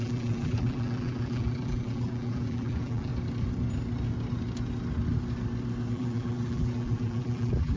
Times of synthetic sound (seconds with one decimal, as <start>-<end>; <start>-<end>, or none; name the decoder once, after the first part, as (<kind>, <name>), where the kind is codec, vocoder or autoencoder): 0.0-3.1 (vocoder, BigVGAN v2); 5.9-7.8